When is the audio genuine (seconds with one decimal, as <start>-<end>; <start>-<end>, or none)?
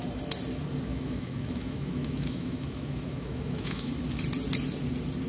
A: 0.0-0.9; 3.9-5.3